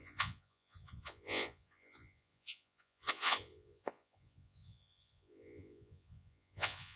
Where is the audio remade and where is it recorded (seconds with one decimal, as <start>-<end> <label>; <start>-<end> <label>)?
0.0-7.0 remade